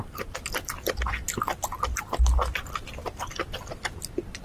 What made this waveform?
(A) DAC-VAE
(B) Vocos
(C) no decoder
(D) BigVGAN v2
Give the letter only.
C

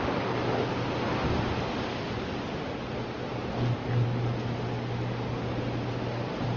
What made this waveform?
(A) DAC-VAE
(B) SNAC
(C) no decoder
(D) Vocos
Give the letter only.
C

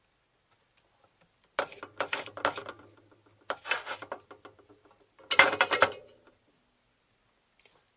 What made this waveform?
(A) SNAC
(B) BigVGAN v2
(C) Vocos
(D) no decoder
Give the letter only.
D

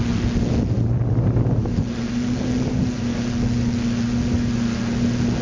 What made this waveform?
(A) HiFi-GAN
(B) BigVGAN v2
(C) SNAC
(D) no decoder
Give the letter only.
D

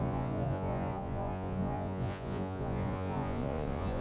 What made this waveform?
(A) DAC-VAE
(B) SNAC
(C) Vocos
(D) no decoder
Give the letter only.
C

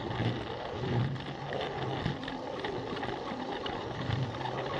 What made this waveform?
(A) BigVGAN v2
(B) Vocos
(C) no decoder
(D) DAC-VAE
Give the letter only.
C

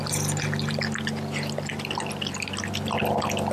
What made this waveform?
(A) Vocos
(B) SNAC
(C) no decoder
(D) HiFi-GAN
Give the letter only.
C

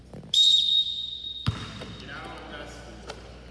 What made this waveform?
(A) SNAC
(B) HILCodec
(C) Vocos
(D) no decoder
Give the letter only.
D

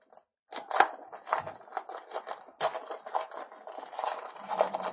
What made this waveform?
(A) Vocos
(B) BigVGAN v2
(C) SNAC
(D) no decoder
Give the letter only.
D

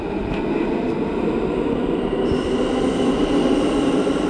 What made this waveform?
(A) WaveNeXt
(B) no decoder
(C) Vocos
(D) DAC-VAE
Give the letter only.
B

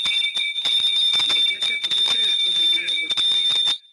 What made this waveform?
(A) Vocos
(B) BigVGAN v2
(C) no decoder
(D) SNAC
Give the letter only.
C